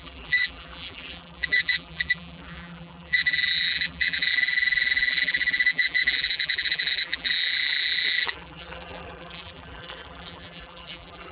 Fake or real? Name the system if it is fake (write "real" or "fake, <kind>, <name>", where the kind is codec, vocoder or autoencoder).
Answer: fake, vocoder, BigVGAN v2